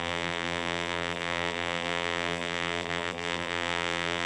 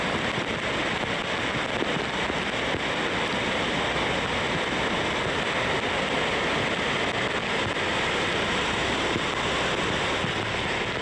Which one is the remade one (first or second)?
first